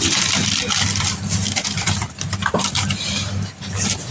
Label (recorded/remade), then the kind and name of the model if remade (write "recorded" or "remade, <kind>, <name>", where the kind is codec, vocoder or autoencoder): remade, vocoder, BigVGAN v2